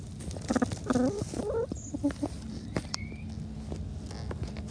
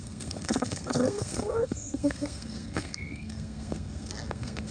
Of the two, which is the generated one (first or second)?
second